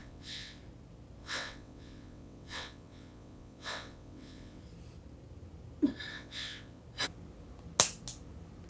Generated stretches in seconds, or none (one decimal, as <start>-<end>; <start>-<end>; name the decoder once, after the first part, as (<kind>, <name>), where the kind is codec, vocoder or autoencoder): 0.0-0.6 (vocoder, WaveNeXt); 1.2-4.6; 6.1-6.8